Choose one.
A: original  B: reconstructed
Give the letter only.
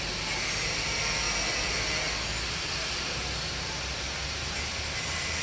A